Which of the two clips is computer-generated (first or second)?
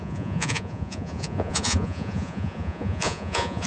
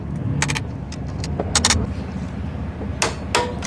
first